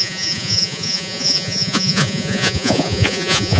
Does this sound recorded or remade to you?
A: remade